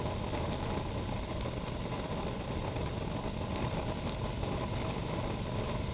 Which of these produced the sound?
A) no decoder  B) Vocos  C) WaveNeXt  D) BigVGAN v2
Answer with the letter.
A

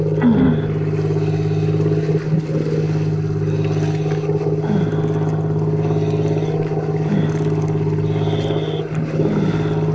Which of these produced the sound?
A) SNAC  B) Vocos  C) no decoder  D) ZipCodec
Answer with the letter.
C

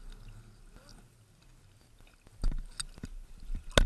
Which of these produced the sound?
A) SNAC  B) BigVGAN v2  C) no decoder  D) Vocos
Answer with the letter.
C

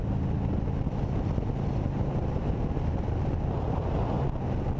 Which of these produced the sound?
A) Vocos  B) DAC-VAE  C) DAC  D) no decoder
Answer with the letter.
D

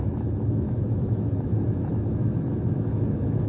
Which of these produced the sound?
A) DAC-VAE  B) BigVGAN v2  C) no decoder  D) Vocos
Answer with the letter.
A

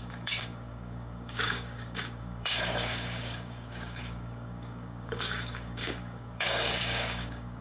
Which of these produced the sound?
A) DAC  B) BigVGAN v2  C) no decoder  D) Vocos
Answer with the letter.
A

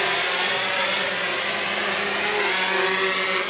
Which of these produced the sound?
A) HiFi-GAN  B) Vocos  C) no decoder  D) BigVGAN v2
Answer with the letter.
C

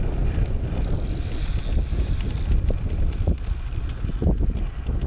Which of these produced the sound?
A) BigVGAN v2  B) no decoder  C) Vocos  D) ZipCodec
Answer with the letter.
B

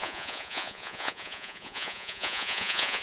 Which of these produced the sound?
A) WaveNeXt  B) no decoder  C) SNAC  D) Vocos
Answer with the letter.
D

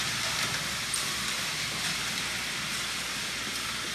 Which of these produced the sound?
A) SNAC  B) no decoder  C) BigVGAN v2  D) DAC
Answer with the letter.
B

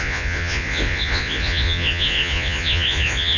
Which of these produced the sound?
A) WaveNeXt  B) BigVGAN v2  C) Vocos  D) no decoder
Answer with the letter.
C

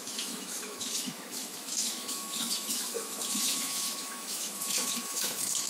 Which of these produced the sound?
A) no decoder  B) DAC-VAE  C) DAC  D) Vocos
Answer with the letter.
B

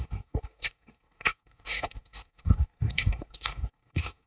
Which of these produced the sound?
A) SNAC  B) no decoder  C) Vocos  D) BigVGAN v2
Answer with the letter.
A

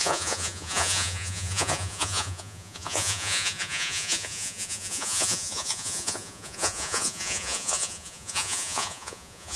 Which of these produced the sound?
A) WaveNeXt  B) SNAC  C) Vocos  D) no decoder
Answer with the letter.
C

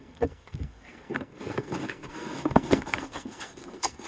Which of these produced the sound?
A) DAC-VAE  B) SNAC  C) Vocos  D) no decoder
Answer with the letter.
B